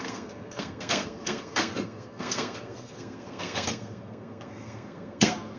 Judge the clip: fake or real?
fake